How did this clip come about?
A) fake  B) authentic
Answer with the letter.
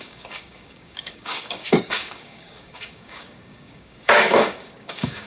A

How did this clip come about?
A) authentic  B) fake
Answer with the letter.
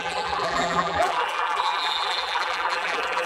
B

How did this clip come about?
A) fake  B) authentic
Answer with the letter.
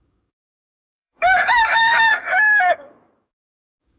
A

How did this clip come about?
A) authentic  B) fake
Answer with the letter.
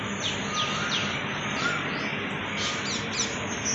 A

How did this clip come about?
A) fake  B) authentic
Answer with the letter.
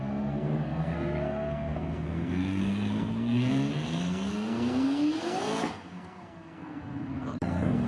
A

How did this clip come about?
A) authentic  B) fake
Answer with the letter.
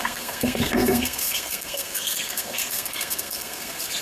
B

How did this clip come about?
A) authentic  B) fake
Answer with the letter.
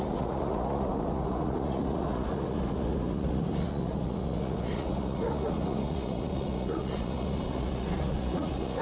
B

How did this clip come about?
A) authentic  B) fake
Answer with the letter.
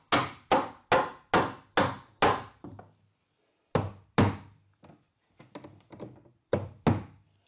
A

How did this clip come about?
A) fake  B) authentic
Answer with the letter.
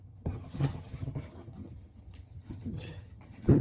A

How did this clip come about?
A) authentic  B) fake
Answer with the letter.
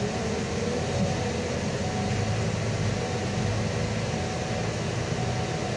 A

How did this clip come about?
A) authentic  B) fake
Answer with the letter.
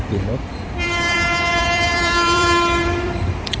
B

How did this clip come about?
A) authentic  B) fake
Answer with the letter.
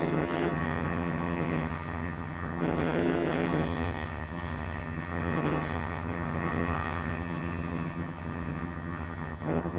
B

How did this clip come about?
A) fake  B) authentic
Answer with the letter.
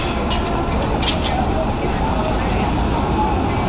B